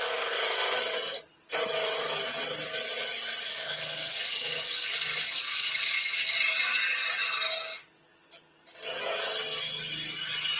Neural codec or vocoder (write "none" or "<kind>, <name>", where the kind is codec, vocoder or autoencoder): none